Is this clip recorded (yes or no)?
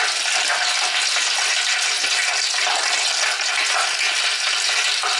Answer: yes